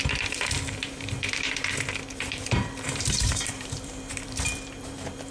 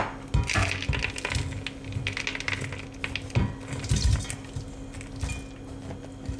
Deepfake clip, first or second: first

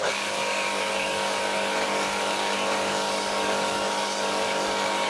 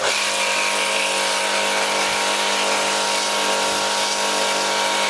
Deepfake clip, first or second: first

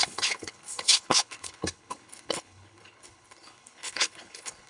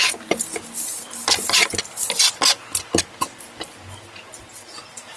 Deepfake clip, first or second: first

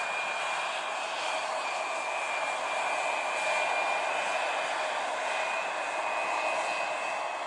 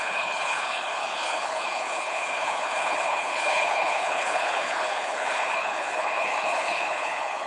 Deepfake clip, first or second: second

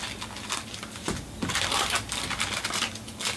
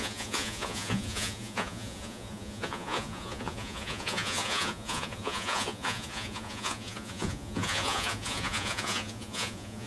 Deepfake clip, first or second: second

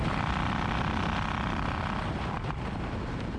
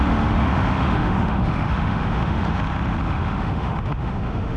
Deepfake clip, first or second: second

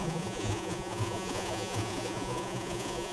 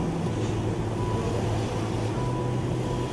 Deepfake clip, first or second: first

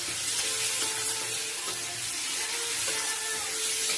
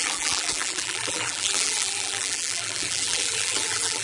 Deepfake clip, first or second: second